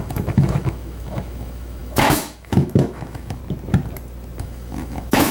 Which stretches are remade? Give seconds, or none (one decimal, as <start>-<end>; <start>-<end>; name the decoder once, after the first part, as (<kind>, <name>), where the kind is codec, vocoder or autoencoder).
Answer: 0.0-3.4 (autoencoder, DAC-VAE); 4.4-5.3